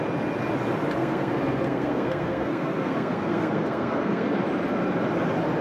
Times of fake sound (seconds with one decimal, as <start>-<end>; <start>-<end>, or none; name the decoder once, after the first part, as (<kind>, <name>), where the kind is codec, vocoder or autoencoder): 1.0-4.4 (codec, SNAC)